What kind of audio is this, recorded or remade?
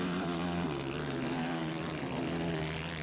recorded